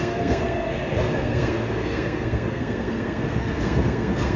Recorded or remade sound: remade